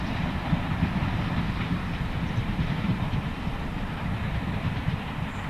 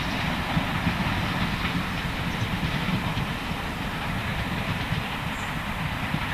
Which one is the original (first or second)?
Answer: second